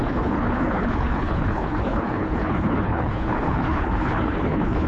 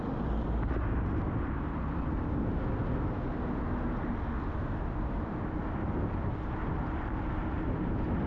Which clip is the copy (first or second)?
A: first